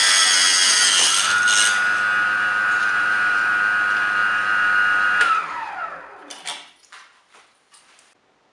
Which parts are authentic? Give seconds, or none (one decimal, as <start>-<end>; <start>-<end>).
0.0-2.8; 3.4-8.5